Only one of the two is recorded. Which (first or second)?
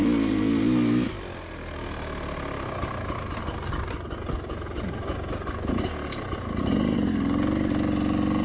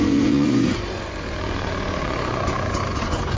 first